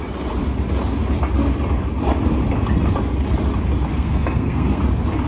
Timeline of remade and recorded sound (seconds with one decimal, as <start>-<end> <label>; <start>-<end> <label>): 0.0-3.9 recorded; 3.9-4.8 remade; 4.8-5.3 recorded